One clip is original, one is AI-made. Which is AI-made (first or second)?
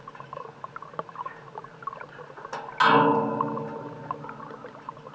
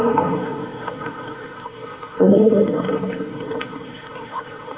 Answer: second